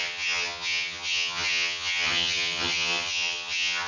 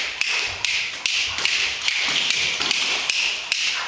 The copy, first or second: first